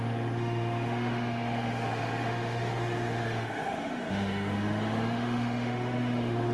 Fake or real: fake